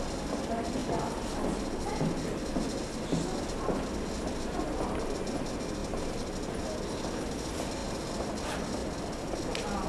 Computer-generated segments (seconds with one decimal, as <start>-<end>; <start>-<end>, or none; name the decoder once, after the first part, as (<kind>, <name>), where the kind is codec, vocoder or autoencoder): none